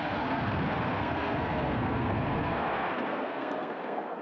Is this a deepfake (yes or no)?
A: yes